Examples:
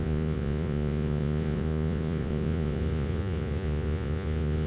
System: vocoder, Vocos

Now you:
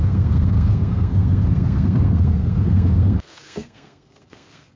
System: codec, SNAC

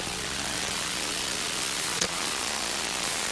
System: vocoder, Vocos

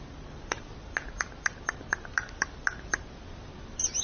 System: none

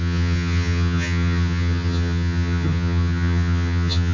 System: vocoder, HiFi-GAN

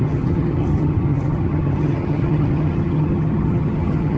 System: vocoder, HiFi-GAN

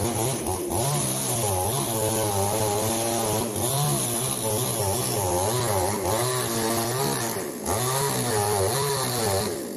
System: none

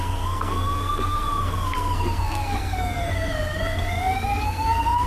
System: codec, SNAC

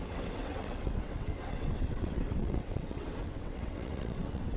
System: vocoder, WaveNeXt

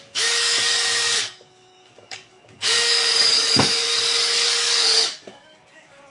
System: codec, DAC